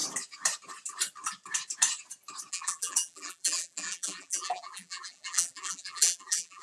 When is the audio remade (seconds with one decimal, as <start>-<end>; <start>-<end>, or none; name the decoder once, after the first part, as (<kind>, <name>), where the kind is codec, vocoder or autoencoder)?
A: 2.5-6.6 (vocoder, BigVGAN v2)